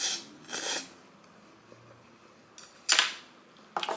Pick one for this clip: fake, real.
real